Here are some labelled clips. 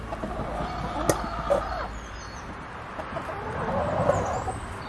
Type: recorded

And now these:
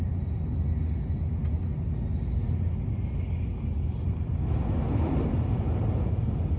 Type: recorded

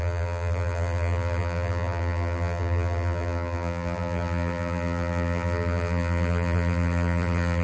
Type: remade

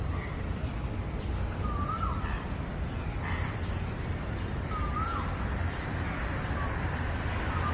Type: recorded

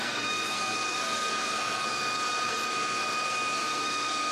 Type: remade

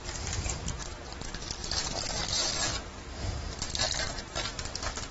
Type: recorded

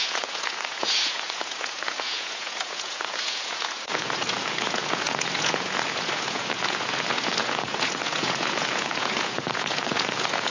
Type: remade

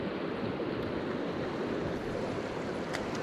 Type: recorded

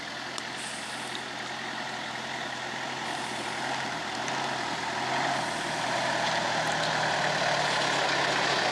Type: recorded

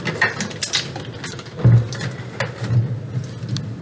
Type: recorded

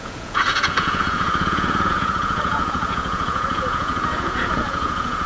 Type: remade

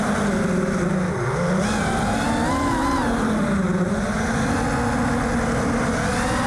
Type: recorded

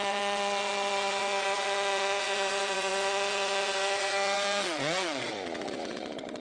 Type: remade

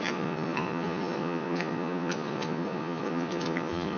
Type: remade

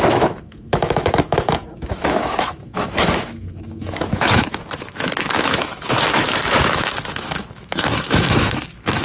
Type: remade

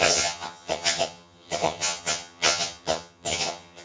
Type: remade